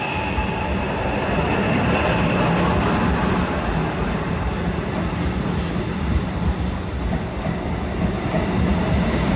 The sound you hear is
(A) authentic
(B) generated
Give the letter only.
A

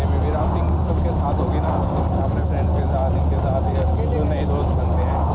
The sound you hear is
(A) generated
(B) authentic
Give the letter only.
B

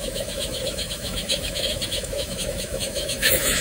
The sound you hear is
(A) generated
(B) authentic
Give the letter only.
A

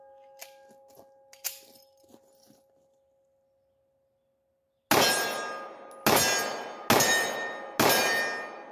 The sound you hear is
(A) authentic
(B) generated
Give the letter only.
A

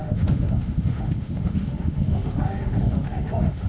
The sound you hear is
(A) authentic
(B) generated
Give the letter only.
B